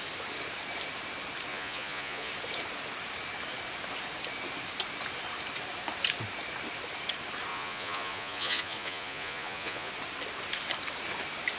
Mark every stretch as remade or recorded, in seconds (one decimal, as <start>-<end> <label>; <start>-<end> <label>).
0.0-1.5 recorded; 1.5-2.3 remade; 2.3-7.5 recorded; 7.5-9.9 remade; 9.9-11.6 recorded